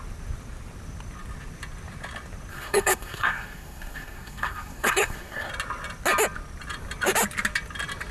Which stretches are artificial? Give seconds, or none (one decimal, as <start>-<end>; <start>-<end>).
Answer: 2.5-5.5